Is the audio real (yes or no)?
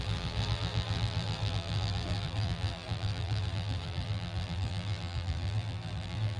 no